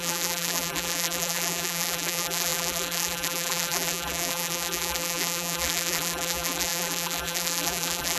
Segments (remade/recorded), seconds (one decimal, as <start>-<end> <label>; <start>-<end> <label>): 0.0-8.2 remade